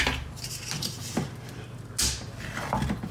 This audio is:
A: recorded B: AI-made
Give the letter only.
A